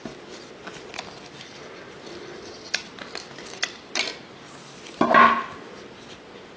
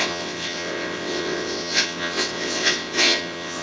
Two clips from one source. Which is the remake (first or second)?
second